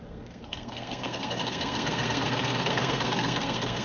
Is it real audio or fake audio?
fake